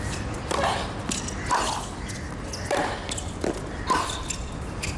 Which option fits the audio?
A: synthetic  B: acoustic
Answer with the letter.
B